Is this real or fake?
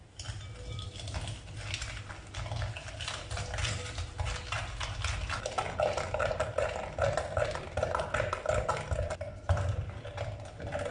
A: real